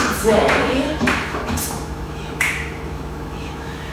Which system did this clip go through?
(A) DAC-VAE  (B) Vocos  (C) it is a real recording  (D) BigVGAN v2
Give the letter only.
A